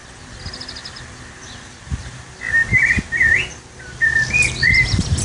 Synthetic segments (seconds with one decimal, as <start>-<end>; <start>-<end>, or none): none